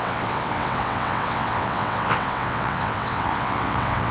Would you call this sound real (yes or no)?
no